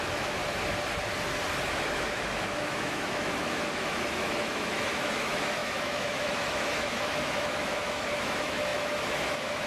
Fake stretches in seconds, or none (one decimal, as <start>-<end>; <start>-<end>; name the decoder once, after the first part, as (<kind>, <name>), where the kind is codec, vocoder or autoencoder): 0.0-0.4 (autoencoder, DAC-VAE); 1.6-9.7